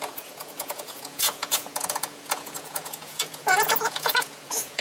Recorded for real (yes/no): no